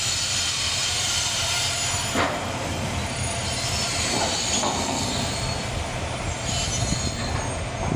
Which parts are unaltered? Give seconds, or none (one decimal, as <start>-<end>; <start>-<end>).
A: 0.0-4.6; 5.1-8.0